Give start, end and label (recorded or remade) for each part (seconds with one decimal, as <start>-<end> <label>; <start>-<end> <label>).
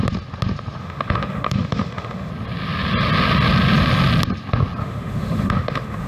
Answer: 0.0-0.8 recorded; 0.8-2.3 remade; 2.3-4.8 recorded; 4.8-6.1 remade